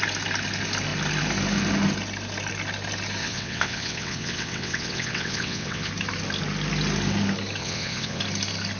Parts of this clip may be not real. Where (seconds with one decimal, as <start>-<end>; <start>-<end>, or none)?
3.2-5.9; 7.6-8.2